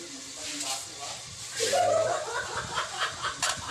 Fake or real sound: real